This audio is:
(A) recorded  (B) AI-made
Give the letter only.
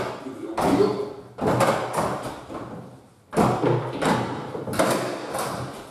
A